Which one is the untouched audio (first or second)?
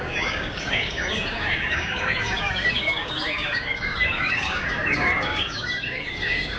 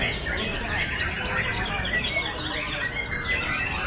second